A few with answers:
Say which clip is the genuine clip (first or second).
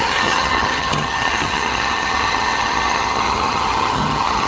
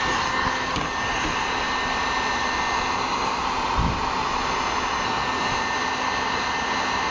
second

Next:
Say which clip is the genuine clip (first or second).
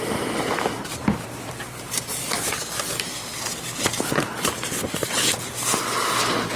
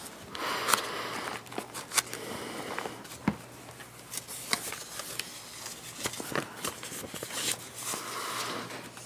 second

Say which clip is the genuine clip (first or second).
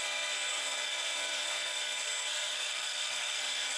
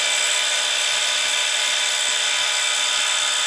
second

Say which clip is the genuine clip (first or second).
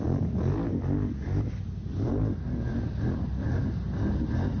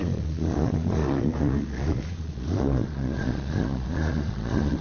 first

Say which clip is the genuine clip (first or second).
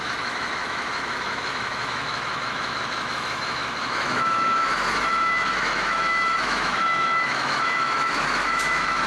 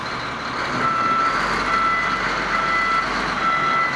second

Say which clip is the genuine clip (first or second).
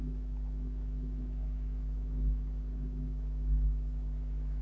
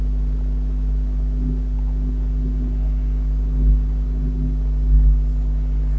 second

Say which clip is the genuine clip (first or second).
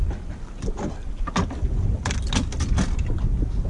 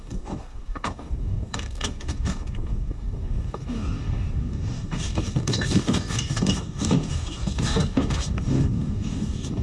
first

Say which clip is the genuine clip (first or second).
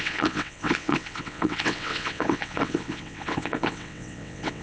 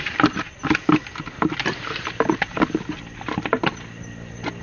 second